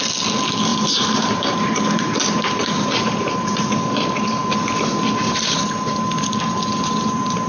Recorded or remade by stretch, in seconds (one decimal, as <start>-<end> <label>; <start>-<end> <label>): 0.0-0.7 recorded; 0.7-3.7 remade; 3.7-7.5 recorded